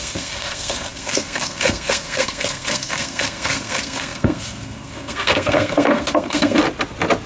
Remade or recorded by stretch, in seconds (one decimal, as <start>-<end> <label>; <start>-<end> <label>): 0.0-6.6 remade; 6.6-7.3 recorded